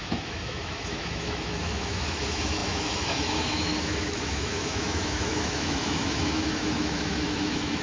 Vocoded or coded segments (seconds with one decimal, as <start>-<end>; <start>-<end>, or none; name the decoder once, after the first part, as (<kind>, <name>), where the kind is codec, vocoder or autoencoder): 0.0-7.8 (autoencoder, DAC-VAE)